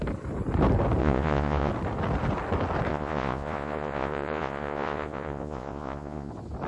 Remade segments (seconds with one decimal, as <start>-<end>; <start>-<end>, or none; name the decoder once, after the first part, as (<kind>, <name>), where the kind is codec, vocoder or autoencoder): 1.0-1.7 (vocoder, Vocos); 2.9-6.3